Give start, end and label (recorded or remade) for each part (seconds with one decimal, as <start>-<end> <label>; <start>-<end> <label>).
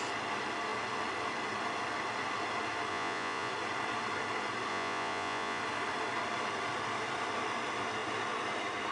0.0-2.9 recorded; 2.9-3.5 remade; 3.5-4.7 recorded; 4.7-5.6 remade; 5.6-8.9 recorded